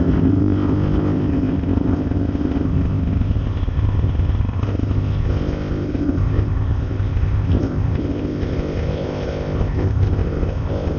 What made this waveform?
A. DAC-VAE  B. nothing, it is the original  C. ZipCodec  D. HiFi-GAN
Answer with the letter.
C